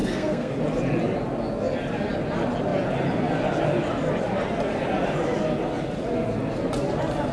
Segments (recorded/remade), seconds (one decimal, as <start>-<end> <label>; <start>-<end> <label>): 0.0-0.5 remade; 0.5-7.3 recorded